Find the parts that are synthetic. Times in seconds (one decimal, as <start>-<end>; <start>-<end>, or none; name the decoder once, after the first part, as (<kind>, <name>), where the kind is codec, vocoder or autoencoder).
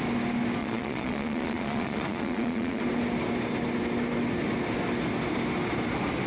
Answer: 0.6-2.8 (vocoder, Vocos)